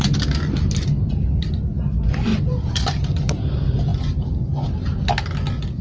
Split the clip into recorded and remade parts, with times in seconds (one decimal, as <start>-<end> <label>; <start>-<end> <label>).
0.0-2.3 recorded; 2.3-3.5 remade; 3.5-5.8 recorded